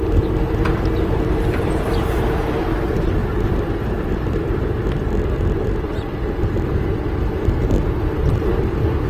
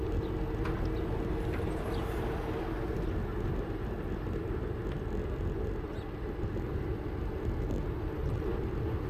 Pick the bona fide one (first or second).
second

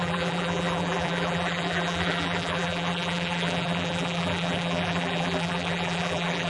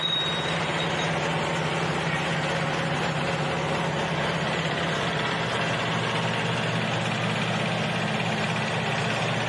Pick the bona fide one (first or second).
second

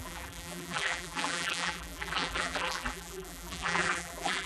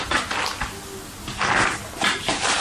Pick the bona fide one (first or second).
second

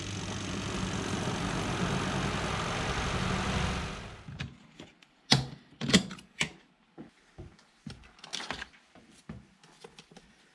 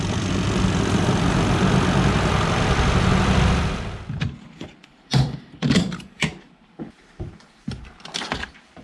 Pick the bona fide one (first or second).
first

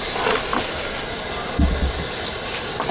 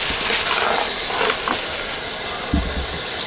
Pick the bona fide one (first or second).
first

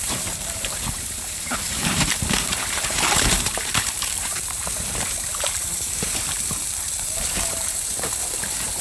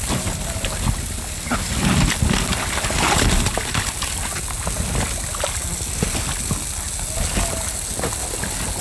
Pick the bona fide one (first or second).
second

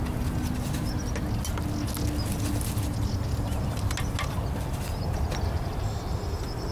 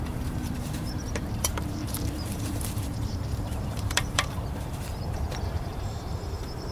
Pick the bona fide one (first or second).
first